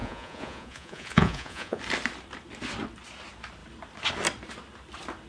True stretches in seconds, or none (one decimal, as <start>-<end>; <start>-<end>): 1.8-5.3